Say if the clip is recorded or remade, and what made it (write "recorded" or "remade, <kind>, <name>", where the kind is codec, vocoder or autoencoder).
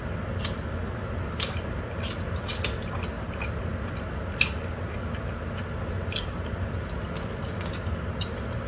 recorded